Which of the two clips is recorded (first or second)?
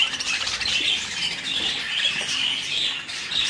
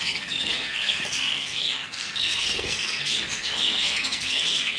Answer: first